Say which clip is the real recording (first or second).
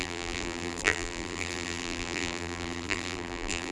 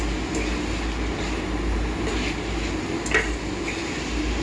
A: second